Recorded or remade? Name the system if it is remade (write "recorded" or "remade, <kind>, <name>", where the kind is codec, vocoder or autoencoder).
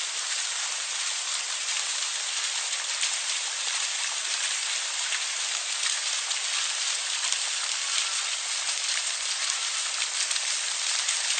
recorded